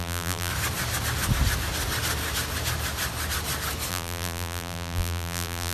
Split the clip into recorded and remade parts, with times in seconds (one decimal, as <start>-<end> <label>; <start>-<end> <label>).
0.0-0.5 remade; 0.5-3.9 recorded; 3.9-5.7 remade